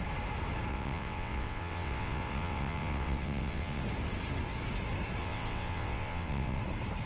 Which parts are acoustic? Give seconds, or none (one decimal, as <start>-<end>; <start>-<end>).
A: 0.0-0.7; 3.8-5.2; 6.6-7.1